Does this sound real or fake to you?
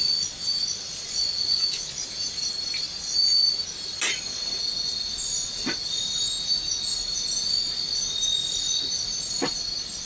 real